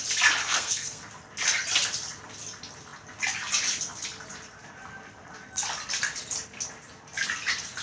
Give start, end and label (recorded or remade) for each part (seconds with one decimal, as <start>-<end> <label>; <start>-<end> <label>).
0.0-0.4 recorded; 0.4-1.1 remade; 1.1-7.8 recorded